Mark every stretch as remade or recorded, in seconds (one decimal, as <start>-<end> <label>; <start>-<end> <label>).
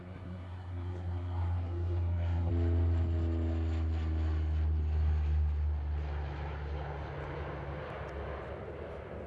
0.0-2.5 remade; 2.5-9.3 recorded